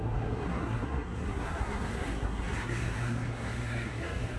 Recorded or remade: remade